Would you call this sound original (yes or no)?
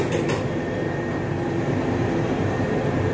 no